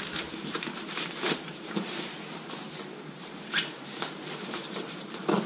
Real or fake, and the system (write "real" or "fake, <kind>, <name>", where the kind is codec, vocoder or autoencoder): fake, vocoder, BigVGAN v2